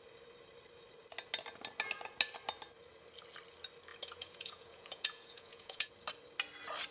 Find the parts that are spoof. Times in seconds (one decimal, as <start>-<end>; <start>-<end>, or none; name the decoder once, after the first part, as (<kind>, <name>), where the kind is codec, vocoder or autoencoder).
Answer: 3.9-5.9 (vocoder, Vocos)